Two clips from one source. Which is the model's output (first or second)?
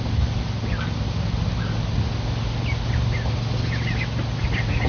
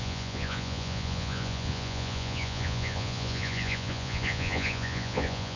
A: second